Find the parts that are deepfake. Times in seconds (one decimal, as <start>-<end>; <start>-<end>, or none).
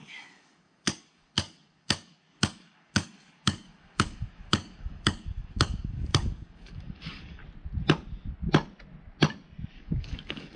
0.0-7.4; 9.7-10.6